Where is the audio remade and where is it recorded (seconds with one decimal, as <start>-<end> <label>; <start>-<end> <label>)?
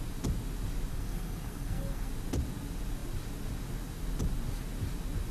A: 0.0-0.9 recorded; 0.9-2.1 remade; 2.1-5.3 recorded